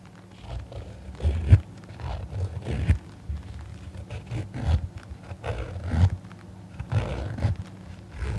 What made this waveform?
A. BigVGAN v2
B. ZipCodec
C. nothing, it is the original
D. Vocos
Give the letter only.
C